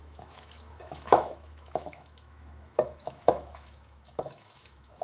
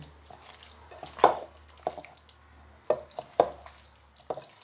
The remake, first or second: first